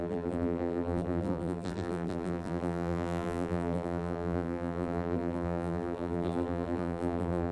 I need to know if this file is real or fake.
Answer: fake